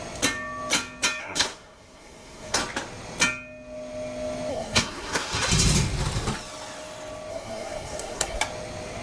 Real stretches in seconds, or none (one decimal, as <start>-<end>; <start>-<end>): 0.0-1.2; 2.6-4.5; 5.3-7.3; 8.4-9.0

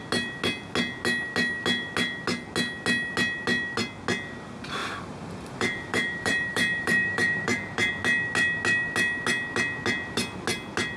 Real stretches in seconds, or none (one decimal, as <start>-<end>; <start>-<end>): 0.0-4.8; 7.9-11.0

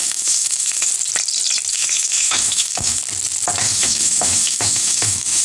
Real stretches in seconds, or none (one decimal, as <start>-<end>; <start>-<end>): 0.9-1.7; 3.0-3.6

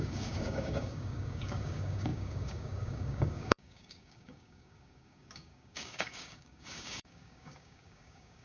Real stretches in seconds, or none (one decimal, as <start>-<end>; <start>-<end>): none

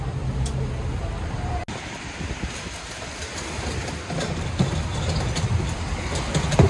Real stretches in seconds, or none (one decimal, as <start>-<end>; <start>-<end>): 0.0-6.7